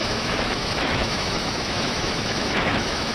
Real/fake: fake